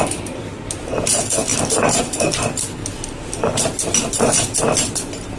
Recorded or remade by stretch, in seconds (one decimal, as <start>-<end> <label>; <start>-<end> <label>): 0.0-5.4 recorded